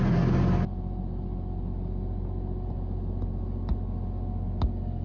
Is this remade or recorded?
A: recorded